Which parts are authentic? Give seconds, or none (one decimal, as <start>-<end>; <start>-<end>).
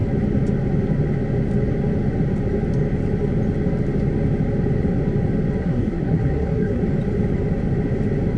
0.0-5.6; 6.8-8.4